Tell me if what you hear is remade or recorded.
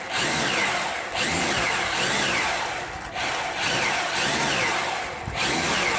recorded